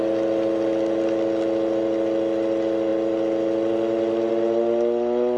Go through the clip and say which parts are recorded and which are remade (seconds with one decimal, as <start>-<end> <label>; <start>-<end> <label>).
0.0-5.4 recorded